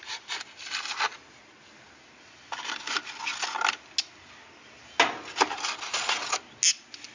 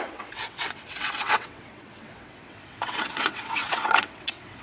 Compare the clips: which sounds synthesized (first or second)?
second